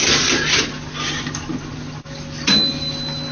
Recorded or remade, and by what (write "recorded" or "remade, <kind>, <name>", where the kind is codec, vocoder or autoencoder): recorded